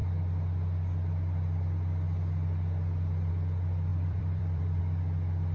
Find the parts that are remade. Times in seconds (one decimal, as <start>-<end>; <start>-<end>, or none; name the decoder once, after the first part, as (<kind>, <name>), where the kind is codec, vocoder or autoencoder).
3.9-4.8 (vocoder, BigVGAN v2)